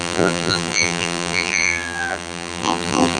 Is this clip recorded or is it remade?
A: remade